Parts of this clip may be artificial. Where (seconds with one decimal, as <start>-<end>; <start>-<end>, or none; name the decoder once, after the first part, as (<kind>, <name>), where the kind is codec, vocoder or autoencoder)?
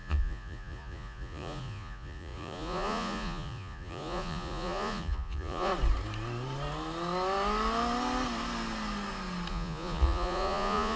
0.0-5.7 (vocoder, Vocos); 9.5-11.0